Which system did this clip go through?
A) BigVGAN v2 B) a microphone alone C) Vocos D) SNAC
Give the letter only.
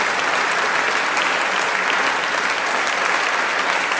B